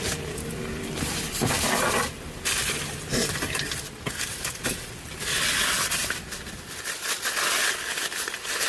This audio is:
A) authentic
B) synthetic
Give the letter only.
A